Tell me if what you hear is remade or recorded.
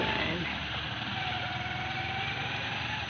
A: recorded